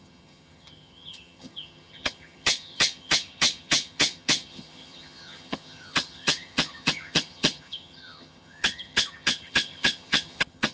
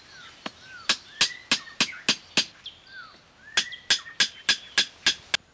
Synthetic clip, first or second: first